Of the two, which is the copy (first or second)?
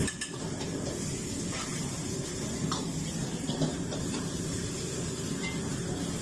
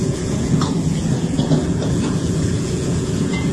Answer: second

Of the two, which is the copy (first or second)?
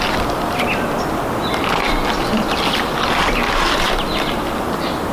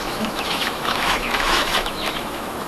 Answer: second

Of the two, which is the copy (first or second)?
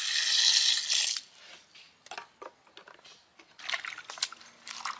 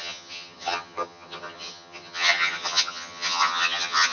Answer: second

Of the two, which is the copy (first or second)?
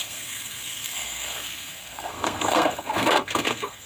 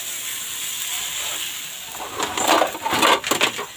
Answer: first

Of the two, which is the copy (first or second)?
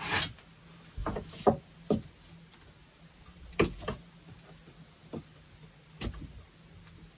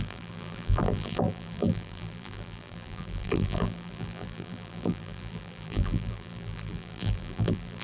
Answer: second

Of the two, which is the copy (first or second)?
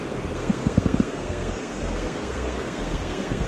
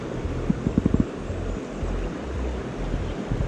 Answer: first